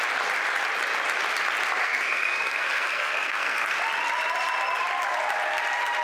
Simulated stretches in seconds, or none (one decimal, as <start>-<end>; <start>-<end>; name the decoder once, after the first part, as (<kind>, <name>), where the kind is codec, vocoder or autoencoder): 1.8-3.8 (codec, SNAC)